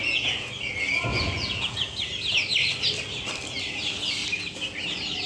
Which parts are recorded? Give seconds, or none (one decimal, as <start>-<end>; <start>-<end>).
0.5-1.1; 1.9-5.3